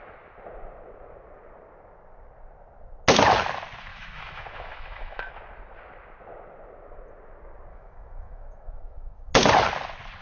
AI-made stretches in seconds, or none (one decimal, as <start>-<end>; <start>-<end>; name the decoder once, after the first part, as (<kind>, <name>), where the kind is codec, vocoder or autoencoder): 3.9-5.3 (autoencoder, DAC-VAE); 7.7-9.3